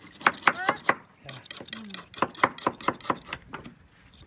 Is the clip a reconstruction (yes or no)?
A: no